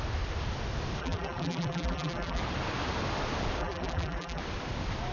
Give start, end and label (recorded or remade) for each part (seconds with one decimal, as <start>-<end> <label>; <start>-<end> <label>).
0.0-1.0 recorded; 1.0-2.4 remade; 2.4-3.6 recorded; 3.6-4.4 remade; 4.4-5.1 recorded